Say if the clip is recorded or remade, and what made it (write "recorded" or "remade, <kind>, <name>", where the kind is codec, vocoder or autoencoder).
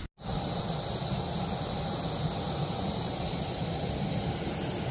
recorded